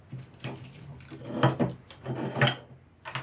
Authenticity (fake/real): real